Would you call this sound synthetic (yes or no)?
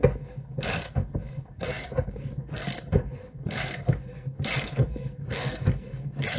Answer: yes